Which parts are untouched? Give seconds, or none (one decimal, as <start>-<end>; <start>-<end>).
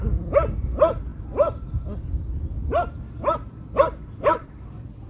0.0-5.1